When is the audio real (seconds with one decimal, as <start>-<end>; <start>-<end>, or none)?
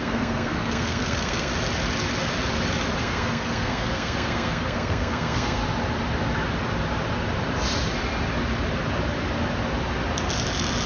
1.5-3.0; 5.6-10.9